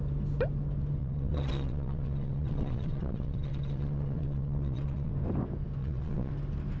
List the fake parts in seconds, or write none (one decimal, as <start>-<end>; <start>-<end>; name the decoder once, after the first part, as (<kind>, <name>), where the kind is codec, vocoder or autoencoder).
1.0-5.1 (vocoder, WaveNeXt); 5.8-6.3